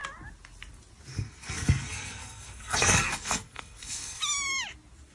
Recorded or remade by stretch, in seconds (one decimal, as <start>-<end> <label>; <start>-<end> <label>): 0.0-1.1 recorded; 1.1-4.2 remade; 4.2-5.1 recorded